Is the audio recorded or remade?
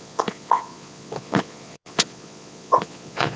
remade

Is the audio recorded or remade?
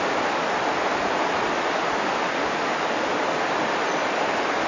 recorded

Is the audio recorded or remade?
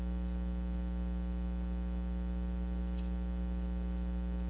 recorded